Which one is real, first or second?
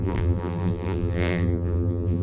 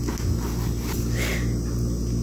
second